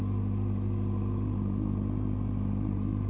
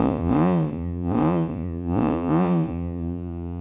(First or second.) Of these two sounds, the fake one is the second